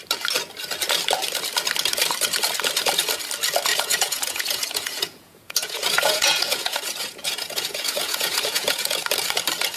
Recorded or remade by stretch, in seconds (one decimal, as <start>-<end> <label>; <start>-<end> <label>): 0.0-3.7 recorded; 3.7-9.0 remade; 9.0-9.8 recorded